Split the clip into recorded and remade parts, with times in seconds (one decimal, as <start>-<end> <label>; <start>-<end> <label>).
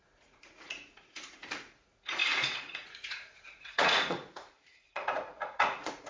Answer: 0.0-6.1 remade